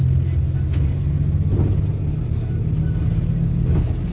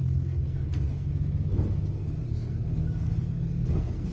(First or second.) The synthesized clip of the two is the second